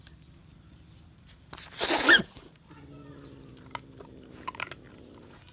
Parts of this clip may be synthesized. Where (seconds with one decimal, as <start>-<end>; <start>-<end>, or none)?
none